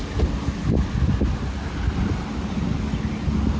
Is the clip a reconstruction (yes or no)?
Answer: no